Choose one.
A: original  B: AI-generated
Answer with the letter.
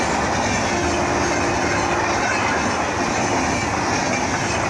A